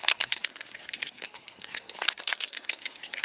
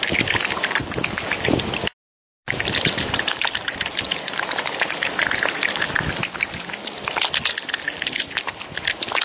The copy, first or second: first